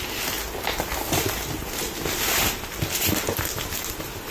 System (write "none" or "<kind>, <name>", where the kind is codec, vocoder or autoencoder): none